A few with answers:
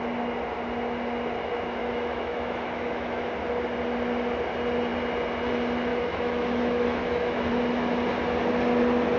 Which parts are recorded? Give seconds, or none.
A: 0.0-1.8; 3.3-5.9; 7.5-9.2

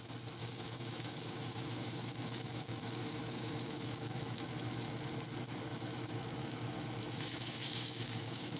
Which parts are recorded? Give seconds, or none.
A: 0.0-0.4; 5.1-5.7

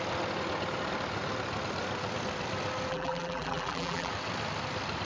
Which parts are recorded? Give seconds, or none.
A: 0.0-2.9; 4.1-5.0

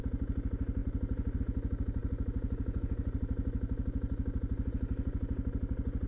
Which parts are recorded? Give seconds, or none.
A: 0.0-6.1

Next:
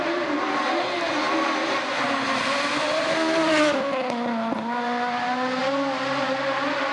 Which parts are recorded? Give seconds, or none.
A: 0.0-6.9

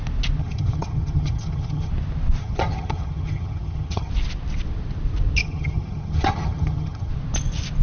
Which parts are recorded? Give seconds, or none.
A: 0.0-0.4; 1.9-2.4; 4.1-5.4; 7.1-7.8

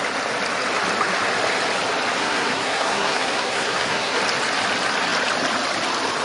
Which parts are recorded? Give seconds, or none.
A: 0.0-2.2; 4.2-6.2

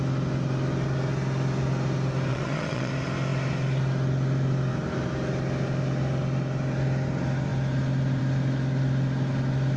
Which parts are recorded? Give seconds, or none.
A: 0.0-2.3; 2.9-9.8